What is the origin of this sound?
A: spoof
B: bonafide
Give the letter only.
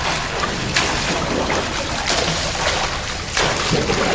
B